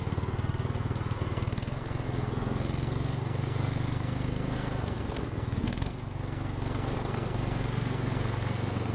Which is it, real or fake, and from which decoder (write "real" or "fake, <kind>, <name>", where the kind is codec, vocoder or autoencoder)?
fake, codec, SNAC